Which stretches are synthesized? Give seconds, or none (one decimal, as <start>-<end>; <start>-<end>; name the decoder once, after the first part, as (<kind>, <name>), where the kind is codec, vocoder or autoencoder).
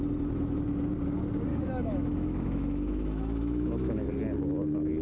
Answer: 1.5-4.1 (autoencoder, DAC-VAE)